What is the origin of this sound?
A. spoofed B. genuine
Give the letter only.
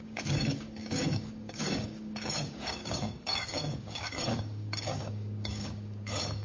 A